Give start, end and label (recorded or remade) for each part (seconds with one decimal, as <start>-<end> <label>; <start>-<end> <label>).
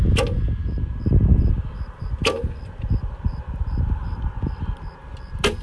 0.0-5.6 recorded